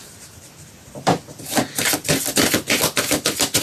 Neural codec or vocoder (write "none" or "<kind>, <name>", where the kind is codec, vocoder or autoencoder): vocoder, BigVGAN v2